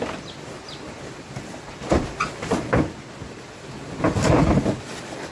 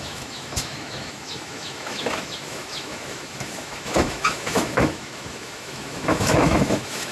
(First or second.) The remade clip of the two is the second